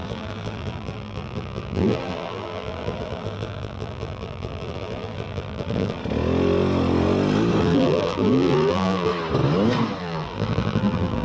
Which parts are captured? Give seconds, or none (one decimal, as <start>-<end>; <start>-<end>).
6.0-7.6; 9.1-10.0